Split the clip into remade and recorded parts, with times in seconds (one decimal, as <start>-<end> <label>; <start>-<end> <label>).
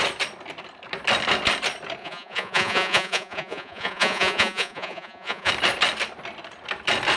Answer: 0.0-2.0 recorded; 2.0-5.5 remade; 5.5-7.2 recorded